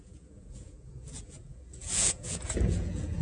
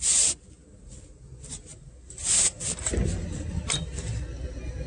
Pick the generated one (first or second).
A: first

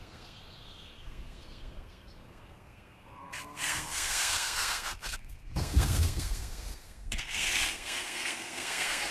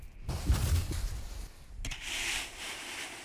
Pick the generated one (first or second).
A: first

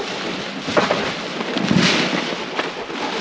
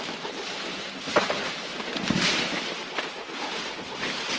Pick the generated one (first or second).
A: second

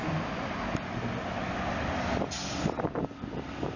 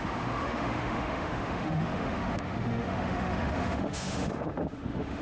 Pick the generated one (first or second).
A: second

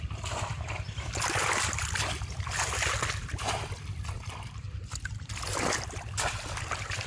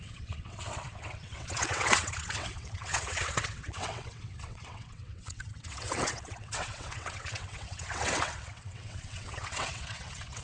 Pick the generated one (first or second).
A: second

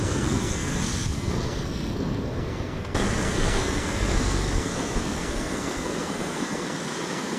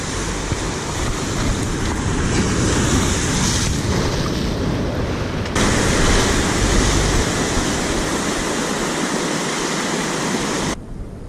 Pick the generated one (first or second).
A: first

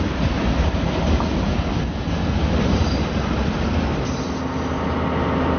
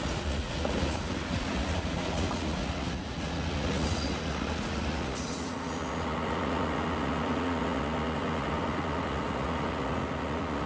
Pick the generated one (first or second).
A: second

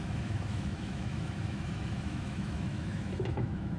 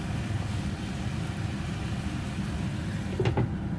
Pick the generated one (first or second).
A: first